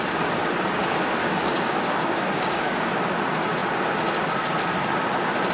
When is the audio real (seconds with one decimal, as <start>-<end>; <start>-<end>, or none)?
0.0-1.2; 2.9-5.5